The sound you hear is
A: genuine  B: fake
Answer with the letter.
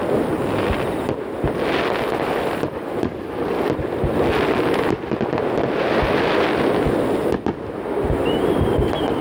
A